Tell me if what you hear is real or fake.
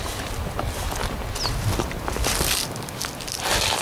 real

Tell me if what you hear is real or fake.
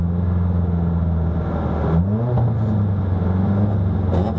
real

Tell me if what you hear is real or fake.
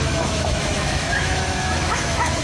fake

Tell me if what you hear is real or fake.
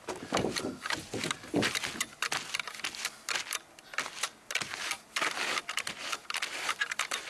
real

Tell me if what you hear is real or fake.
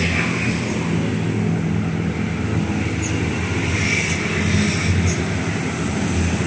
real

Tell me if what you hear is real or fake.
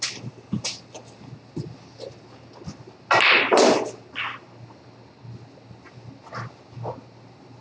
real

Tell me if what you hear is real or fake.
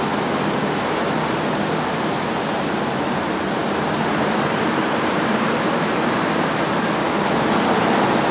real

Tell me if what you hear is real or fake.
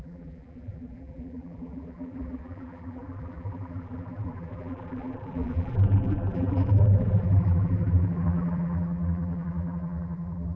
fake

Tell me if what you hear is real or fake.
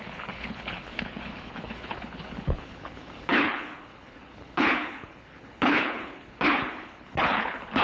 fake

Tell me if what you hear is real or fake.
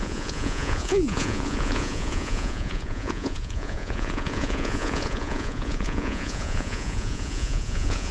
fake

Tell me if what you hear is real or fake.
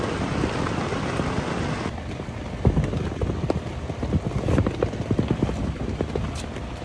real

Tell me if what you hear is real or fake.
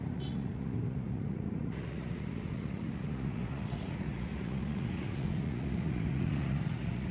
fake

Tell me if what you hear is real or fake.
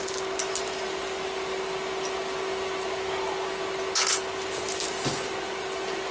real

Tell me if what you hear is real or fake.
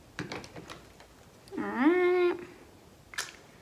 real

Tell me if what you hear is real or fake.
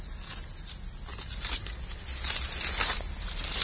real